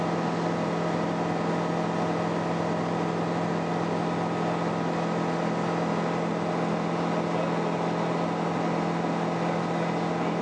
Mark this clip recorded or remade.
recorded